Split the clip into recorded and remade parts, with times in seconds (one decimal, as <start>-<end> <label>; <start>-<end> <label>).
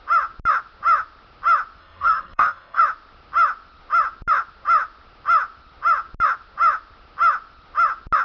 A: 0.0-1.8 recorded; 1.8-2.8 remade; 2.8-8.2 recorded